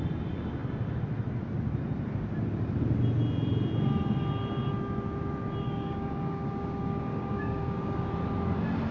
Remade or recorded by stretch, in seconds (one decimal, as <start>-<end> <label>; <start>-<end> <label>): 0.0-5.6 recorded; 5.6-8.1 remade; 8.1-8.9 recorded